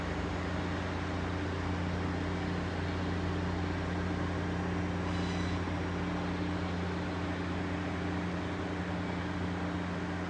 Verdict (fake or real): real